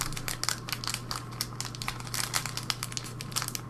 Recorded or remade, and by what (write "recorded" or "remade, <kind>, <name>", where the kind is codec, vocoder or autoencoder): recorded